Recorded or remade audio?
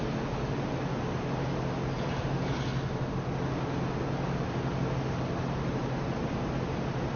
recorded